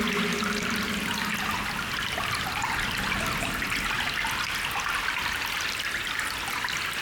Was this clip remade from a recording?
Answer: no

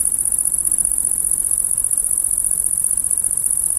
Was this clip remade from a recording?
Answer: yes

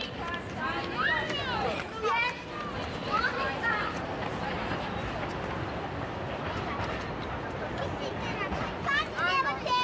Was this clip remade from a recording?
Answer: no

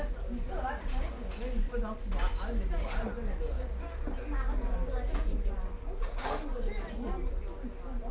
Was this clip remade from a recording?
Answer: no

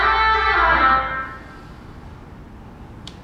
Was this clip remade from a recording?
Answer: yes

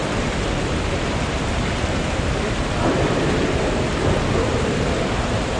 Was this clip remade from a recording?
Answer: yes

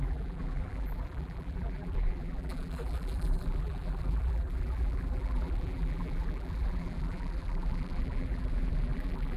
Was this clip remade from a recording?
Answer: yes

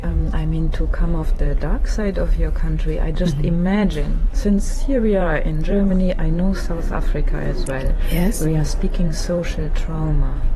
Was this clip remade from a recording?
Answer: yes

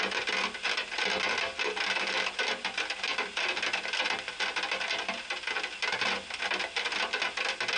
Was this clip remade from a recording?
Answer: no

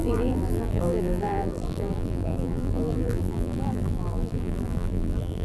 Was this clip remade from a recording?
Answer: yes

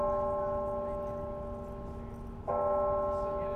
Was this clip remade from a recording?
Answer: no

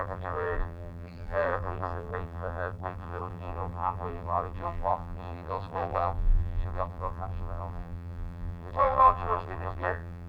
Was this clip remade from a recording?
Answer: yes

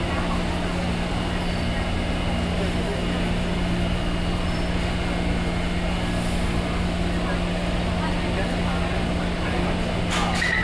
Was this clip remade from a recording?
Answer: no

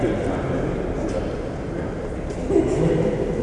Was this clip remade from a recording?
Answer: no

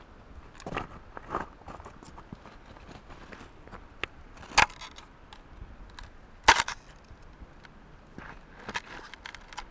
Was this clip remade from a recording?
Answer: no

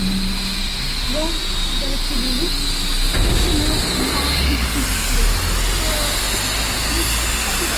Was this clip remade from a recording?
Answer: no